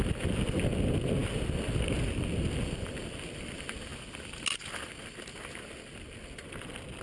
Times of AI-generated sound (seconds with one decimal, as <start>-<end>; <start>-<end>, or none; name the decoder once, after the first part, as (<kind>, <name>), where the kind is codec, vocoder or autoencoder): none